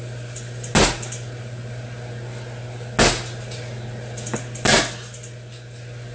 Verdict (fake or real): real